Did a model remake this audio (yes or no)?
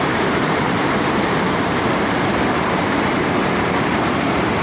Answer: yes